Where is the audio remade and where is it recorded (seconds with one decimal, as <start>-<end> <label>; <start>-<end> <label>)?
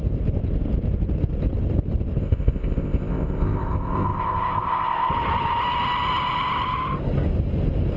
0.0-2.2 recorded; 2.2-5.1 remade; 5.1-8.0 recorded